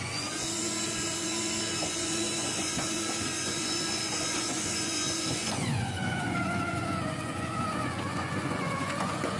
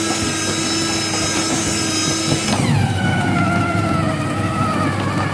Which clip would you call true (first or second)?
second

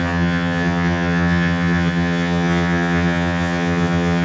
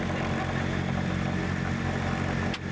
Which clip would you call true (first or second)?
second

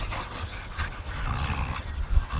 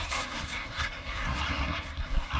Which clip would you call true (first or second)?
first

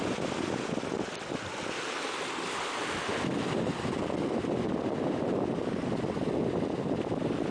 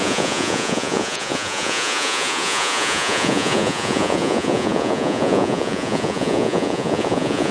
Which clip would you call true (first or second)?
first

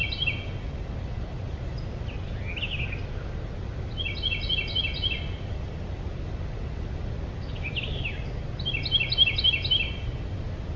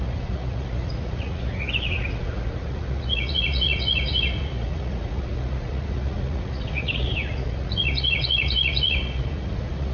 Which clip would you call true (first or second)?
first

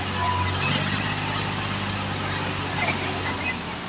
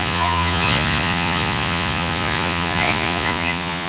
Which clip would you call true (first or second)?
first